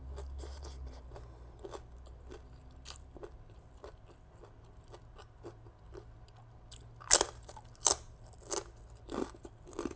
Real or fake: real